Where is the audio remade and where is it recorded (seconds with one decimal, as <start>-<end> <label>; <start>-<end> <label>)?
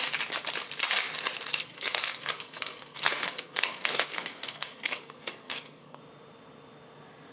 0.0-1.6 recorded; 1.6-6.0 remade; 6.0-7.3 recorded